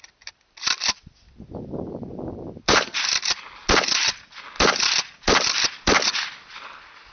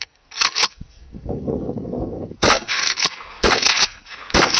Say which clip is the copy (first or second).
second